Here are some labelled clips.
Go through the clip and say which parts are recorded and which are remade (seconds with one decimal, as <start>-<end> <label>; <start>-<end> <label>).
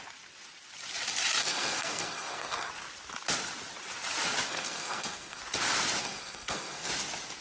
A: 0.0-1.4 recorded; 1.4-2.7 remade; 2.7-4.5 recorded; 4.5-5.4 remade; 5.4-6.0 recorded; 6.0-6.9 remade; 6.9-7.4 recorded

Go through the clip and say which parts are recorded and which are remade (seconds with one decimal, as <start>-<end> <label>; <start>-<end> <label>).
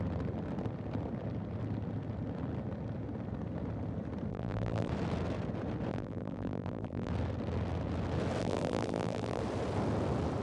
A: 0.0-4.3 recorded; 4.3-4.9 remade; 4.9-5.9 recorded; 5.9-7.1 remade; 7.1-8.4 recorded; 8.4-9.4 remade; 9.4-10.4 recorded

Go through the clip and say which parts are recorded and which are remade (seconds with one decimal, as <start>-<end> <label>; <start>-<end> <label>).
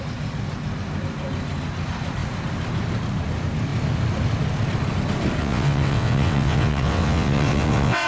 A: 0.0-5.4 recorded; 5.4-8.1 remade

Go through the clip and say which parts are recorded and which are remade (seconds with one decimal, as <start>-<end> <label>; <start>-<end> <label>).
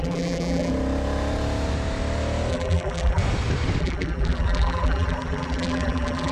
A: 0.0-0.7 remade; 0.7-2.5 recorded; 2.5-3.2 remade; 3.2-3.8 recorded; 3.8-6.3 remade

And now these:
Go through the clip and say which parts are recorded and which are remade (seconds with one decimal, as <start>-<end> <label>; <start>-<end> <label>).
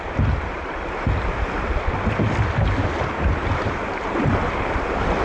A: 0.0-3.4 recorded; 3.4-4.8 remade; 4.8-5.2 recorded